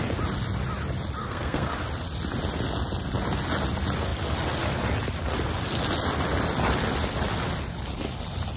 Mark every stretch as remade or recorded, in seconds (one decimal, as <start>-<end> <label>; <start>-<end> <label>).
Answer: 0.0-1.2 recorded; 1.2-1.7 remade; 1.7-8.6 recorded